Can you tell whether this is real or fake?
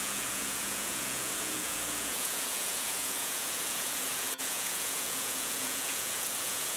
fake